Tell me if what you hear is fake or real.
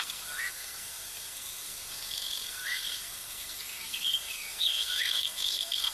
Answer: fake